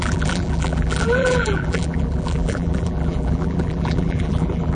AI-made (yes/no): yes